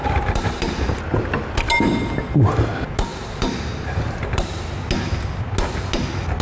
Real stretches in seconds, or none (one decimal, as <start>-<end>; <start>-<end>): 1.0-3.1; 4.6-6.4